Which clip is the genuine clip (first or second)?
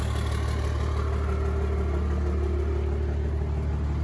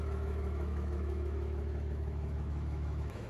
first